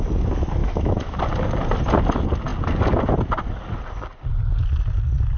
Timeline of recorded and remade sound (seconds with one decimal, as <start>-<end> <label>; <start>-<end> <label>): 0.0-0.6 recorded; 0.6-1.2 remade; 1.2-5.4 recorded

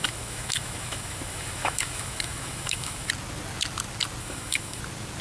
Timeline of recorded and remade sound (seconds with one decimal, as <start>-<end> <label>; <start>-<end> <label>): 0.0-3.1 remade; 3.1-4.2 recorded; 4.2-4.8 remade; 4.8-5.2 recorded

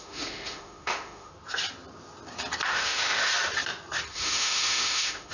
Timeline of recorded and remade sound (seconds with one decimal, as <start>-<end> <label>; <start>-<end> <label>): 0.0-1.3 remade; 1.3-2.7 recorded; 2.7-3.3 remade; 3.3-4.1 recorded; 4.1-5.3 remade